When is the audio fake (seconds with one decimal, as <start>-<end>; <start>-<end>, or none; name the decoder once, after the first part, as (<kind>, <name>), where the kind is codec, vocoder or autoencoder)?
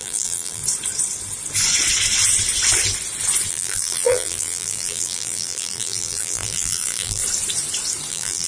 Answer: 0.0-0.6 (vocoder, BigVGAN v2); 3.5-7.2; 8.1-8.5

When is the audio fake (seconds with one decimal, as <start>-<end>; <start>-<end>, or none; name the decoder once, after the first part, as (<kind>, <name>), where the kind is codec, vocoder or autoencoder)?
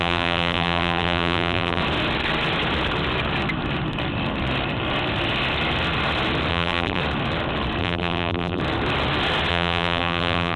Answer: 0.0-1.8 (vocoder, BigVGAN v2); 6.5-7.0; 7.8-8.6; 9.5-10.6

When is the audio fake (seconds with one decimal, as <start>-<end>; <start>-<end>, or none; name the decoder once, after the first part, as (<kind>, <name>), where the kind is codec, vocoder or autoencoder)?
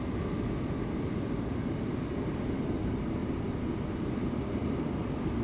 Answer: none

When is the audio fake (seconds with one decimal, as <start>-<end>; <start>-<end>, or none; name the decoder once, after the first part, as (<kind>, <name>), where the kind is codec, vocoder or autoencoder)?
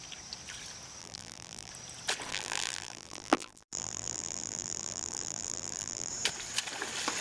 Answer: 1.0-1.7 (vocoder, BigVGAN v2); 2.3-6.1